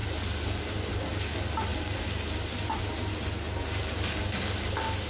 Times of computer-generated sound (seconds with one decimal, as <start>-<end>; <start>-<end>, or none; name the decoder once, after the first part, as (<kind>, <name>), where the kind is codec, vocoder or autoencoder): none

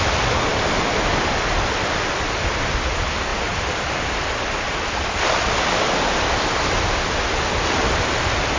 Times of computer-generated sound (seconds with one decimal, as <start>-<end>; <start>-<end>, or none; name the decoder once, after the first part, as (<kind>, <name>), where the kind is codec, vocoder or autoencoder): none